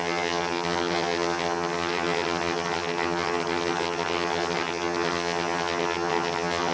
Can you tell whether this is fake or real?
fake